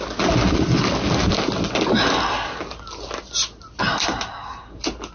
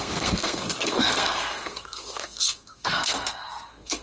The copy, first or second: second